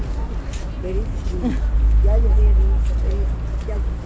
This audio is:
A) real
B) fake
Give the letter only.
A